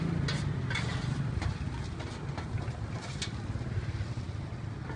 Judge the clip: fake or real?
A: real